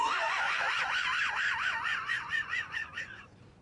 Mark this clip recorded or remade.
remade